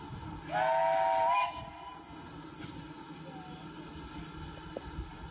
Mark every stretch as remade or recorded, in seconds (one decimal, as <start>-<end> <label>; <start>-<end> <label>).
0.0-5.3 recorded